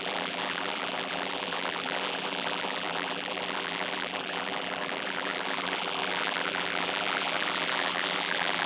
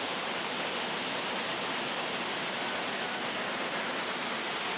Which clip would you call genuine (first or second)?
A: second